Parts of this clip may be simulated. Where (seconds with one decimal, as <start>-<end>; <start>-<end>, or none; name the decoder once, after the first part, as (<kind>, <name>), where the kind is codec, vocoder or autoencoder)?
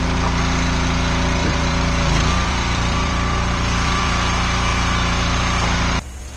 1.4-4.2 (vocoder, BigVGAN v2); 4.7-5.4